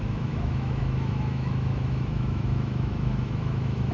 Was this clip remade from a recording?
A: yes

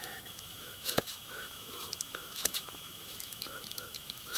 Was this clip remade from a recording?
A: yes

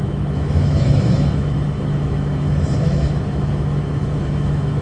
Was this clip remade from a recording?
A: yes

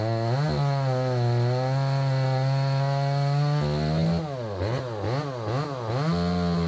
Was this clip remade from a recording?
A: no